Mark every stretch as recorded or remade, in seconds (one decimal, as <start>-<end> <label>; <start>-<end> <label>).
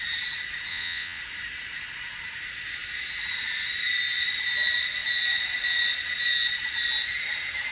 0.0-0.7 recorded; 0.7-1.2 remade; 1.2-7.7 recorded